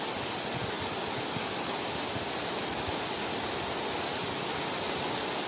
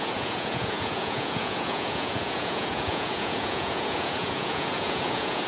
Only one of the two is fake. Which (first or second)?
second